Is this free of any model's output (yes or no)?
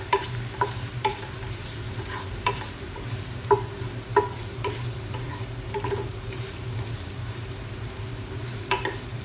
no